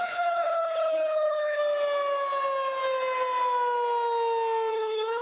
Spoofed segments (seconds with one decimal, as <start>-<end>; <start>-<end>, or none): 0.0-1.6; 4.7-5.2